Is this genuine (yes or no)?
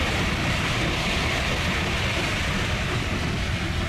no